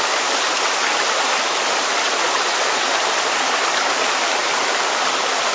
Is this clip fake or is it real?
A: real